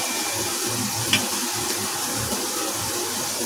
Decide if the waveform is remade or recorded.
recorded